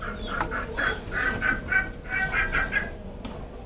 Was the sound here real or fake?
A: real